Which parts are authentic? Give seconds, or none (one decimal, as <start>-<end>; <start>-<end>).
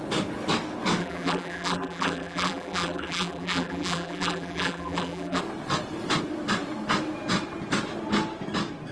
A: 0.0-1.0; 5.4-8.9